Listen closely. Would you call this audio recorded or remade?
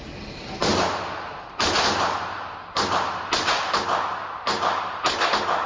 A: recorded